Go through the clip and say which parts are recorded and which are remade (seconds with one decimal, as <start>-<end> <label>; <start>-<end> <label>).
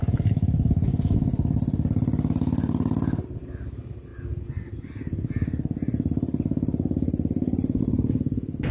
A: 0.0-8.7 recorded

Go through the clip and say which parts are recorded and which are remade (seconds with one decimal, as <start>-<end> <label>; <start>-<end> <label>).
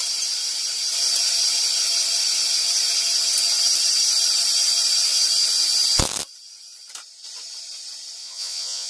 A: 0.0-8.2 recorded; 8.2-8.9 remade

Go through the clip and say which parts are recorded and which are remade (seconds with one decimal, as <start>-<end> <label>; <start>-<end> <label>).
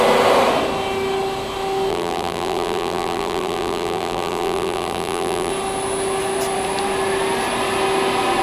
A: 0.0-1.9 recorded; 1.9-5.5 remade; 5.5-8.4 recorded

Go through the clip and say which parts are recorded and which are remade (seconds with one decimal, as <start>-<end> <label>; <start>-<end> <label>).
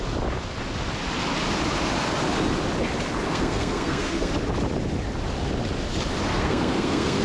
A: 0.0-3.3 recorded; 3.3-4.3 remade; 4.3-6.3 recorded; 6.3-7.2 remade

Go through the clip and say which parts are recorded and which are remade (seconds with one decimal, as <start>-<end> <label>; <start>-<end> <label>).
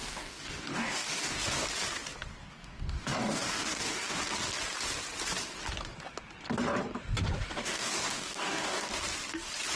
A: 0.0-1.4 remade; 1.4-2.3 recorded; 2.3-4.2 remade; 4.2-7.6 recorded; 7.6-8.9 remade; 8.9-9.8 recorded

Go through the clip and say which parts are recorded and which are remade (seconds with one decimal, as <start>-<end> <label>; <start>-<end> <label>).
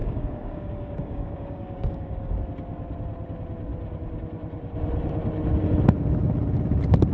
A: 0.0-2.4 remade; 2.4-7.1 recorded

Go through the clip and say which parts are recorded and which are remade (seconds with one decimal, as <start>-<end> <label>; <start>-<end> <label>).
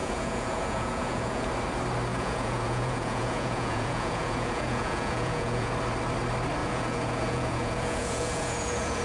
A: 0.0-1.5 remade; 1.5-2.1 recorded; 2.1-5.7 remade; 5.7-6.6 recorded; 6.6-9.0 remade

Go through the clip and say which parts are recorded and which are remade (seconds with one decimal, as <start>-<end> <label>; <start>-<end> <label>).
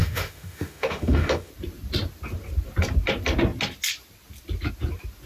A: 0.0-1.5 remade; 1.5-5.3 recorded